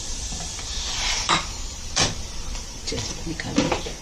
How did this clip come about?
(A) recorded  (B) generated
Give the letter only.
B